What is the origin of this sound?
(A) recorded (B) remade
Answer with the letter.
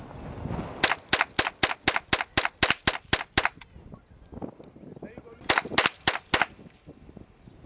A